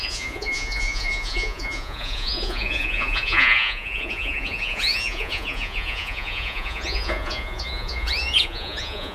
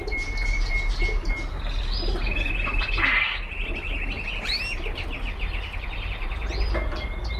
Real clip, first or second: second